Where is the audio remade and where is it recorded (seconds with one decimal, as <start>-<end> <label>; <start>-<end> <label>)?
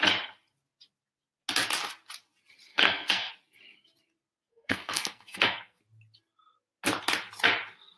0.0-2.7 recorded; 2.7-3.3 remade; 3.3-4.5 recorded; 4.5-5.8 remade; 5.8-8.0 recorded